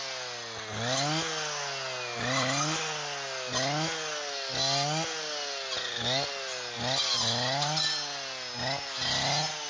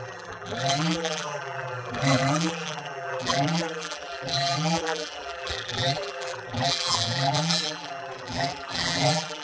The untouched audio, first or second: first